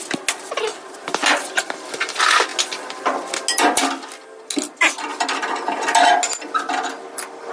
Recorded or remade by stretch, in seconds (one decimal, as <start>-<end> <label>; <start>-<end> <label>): 0.0-0.7 recorded; 0.7-1.5 remade; 1.5-7.5 recorded